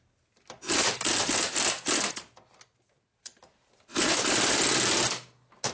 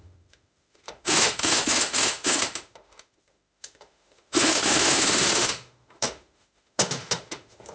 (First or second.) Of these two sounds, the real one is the first